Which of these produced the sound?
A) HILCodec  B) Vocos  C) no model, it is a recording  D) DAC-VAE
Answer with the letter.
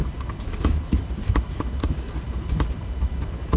C